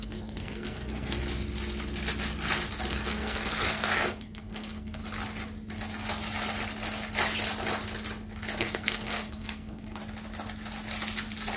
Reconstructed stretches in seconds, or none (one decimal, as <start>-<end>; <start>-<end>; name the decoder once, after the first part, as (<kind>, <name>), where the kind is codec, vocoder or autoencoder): 0.0-1.2 (codec, SNAC); 2.9-5.0; 8.6-10.0